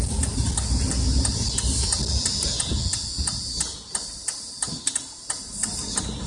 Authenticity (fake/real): real